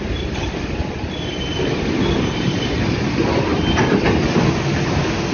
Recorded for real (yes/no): yes